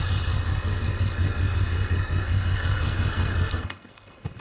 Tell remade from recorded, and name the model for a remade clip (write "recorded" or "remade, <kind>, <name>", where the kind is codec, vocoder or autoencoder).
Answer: remade, codec, SNAC